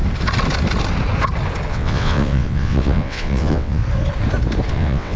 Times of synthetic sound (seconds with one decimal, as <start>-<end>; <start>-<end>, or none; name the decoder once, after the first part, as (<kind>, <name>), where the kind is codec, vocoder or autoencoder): 1.7-3.8 (vocoder, WaveNeXt); 4.7-5.2